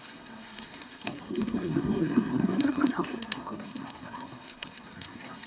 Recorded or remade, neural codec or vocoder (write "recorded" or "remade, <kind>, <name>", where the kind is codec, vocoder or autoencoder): remade, codec, SNAC